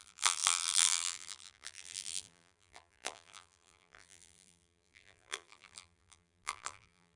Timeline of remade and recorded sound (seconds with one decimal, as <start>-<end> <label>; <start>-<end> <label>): 0.0-7.2 remade